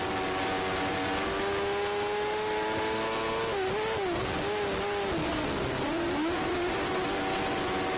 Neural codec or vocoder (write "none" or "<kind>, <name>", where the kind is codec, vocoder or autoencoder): none